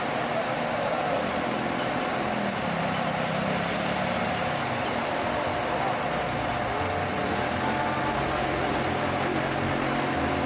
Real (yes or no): yes